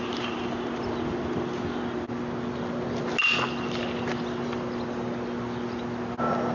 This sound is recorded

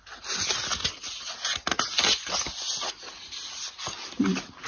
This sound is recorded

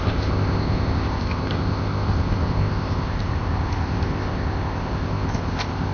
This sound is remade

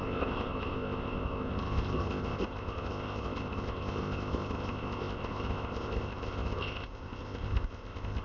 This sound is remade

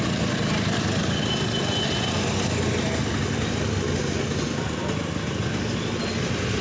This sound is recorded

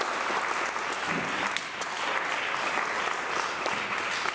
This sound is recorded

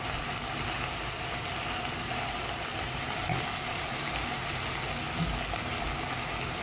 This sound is recorded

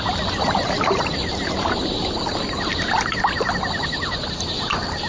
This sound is recorded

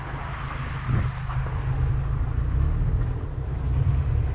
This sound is recorded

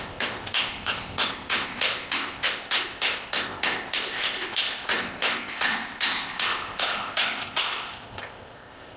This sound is remade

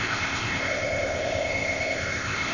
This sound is remade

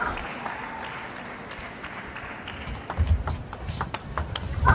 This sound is recorded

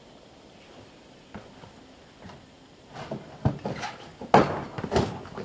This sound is recorded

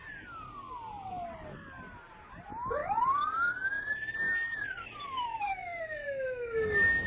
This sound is recorded